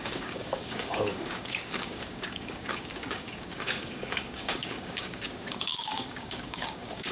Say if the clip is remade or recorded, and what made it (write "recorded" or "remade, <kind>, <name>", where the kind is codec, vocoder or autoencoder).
remade, codec, DAC